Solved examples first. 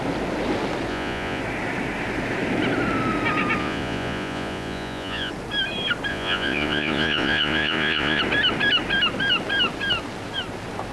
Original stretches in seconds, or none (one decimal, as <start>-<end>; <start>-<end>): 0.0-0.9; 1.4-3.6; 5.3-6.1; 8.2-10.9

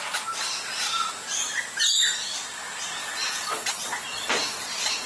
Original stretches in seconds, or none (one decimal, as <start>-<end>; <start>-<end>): 0.0-3.0

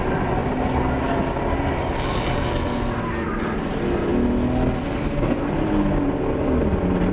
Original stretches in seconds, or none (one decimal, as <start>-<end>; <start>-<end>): 0.0-7.1

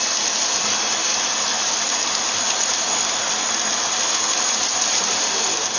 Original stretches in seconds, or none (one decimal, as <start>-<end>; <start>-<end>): 0.0-5.8

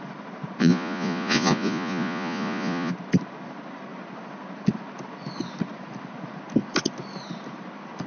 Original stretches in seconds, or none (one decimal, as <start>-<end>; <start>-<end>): 0.0-0.6; 2.9-8.1

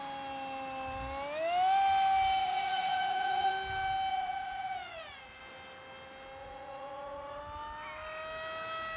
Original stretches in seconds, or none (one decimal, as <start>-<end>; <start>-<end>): 0.0-2.4; 3.5-4.1; 5.4-6.4; 7.4-9.0

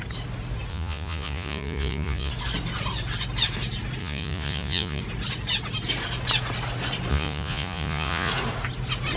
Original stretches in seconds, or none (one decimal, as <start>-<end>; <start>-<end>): 0.0-0.7; 2.3-4.0; 5.0-7.1; 8.3-9.2